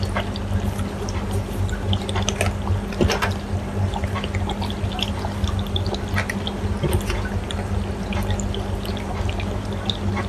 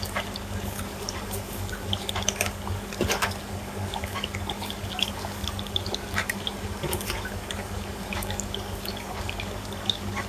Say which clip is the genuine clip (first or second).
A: first